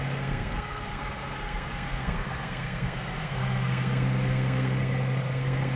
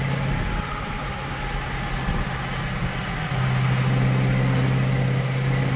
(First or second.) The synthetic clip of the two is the first